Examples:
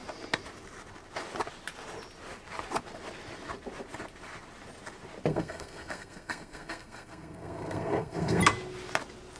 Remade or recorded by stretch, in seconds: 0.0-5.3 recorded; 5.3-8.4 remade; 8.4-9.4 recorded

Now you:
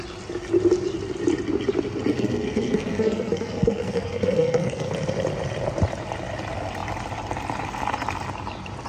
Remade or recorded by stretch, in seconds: 0.0-2.1 recorded; 2.1-4.9 remade; 4.9-8.9 recorded

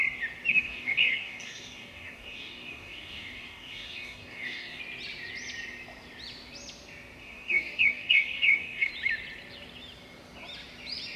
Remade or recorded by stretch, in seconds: 0.0-0.5 recorded; 0.5-4.8 remade; 4.8-7.2 recorded; 7.2-8.9 remade; 8.9-11.2 recorded

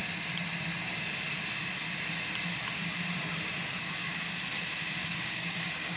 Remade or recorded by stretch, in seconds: 0.0-5.0 recorded; 5.0-6.0 remade

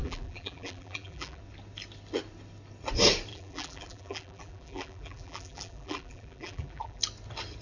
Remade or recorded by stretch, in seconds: 0.0-1.4 remade; 1.4-3.3 recorded; 3.3-7.0 remade; 7.0-7.6 recorded

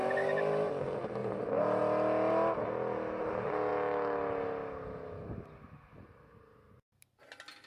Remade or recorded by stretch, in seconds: 0.0-0.7 remade; 0.7-1.2 recorded; 1.2-1.8 remade; 1.8-7.7 recorded

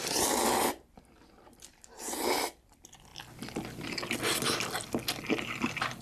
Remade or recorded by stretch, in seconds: 0.0-3.1 remade; 3.1-4.7 recorded; 4.7-6.0 remade

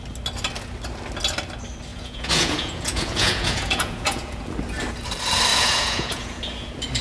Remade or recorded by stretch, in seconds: 0.0-1.9 recorded; 1.9-4.4 remade; 4.4-5.5 recorded; 5.5-6.4 remade; 6.4-7.0 recorded